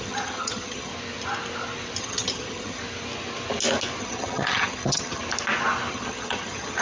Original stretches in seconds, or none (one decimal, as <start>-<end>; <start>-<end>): 0.9-2.0; 2.8-4.0; 5.2-5.9